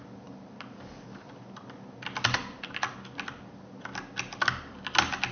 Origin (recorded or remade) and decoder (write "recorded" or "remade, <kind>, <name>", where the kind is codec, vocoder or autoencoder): recorded